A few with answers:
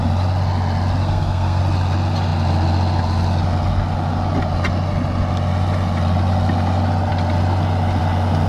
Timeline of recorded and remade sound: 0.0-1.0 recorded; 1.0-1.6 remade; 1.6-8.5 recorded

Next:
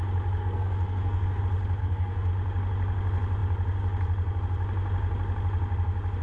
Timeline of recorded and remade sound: 0.0-0.4 recorded; 0.4-1.4 remade; 1.4-1.8 recorded; 1.8-2.3 remade; 2.3-6.2 recorded